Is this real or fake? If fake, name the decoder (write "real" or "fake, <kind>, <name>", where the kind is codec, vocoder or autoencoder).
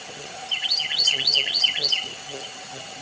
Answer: fake, vocoder, HiFi-GAN